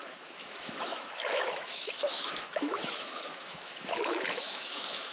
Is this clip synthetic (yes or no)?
yes